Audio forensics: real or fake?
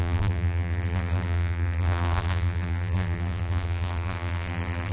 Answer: fake